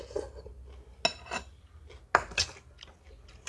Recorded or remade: recorded